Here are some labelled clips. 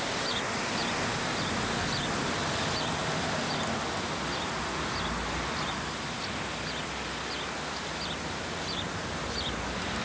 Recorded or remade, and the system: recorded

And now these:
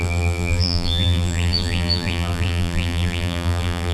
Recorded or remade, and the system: remade, vocoder, BigVGAN v2